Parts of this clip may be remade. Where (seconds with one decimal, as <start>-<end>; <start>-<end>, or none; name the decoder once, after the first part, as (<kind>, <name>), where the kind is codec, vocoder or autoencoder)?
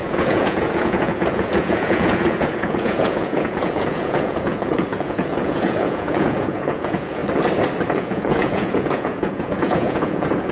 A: 0.0-7.2 (vocoder, Vocos); 7.9-10.5